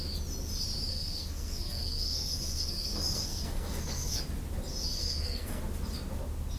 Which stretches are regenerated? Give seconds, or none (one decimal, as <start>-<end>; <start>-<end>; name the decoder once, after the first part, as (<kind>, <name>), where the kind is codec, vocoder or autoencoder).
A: 0.9-4.2 (codec, SNAC); 5.0-5.6

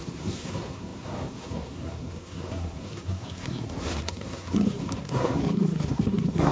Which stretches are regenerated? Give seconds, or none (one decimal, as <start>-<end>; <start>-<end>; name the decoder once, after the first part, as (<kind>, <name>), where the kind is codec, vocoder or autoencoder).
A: 0.0-6.5 (codec, SNAC)